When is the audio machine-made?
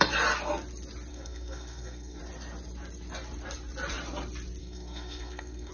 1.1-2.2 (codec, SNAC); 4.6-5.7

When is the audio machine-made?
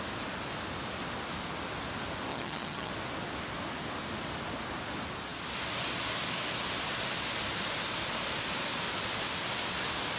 2.3-2.9 (vocoder, HiFi-GAN)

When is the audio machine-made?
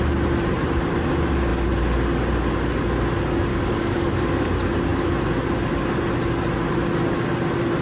3.5-4.5 (codec, DAC)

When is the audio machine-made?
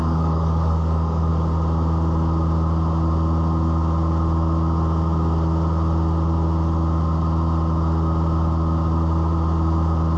0.0-1.3 (codec, DAC)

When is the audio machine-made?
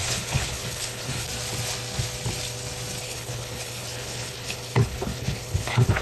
0.0-1.3 (codec, HILCodec); 3.0-6.0